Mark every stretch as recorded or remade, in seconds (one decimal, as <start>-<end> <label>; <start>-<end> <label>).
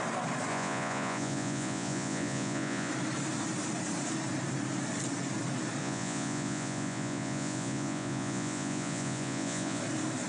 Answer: 0.0-0.5 recorded; 0.5-2.9 remade; 2.9-5.8 recorded; 5.8-9.8 remade; 9.8-10.3 recorded